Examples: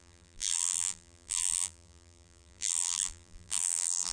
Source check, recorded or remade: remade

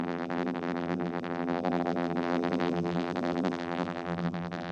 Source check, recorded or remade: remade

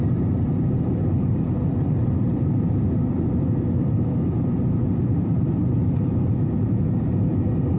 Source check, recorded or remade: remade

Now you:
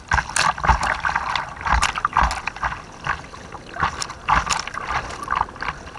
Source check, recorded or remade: recorded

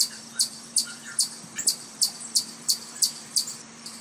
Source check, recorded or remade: remade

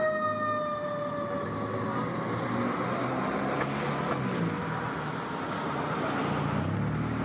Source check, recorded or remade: recorded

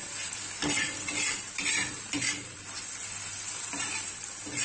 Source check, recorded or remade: remade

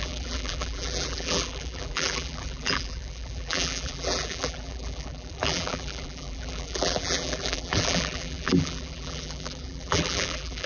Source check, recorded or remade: remade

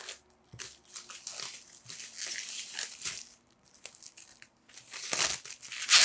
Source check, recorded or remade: recorded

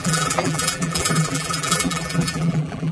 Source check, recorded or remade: remade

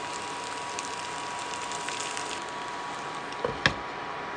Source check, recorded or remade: recorded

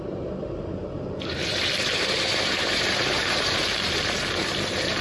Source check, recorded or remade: remade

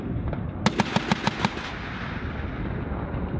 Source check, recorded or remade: recorded